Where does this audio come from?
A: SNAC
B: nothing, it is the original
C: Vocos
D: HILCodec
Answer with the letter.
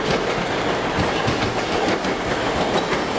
B